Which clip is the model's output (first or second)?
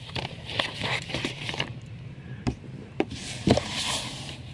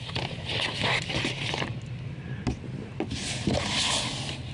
first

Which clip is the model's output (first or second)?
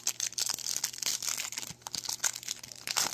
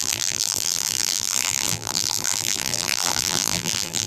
second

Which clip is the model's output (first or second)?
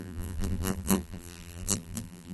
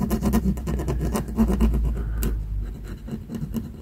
first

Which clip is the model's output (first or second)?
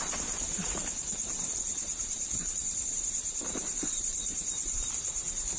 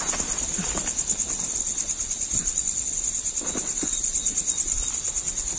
first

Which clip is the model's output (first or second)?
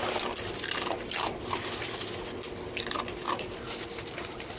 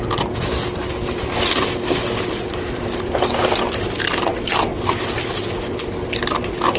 first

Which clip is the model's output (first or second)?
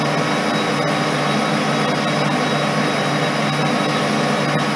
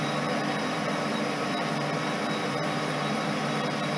second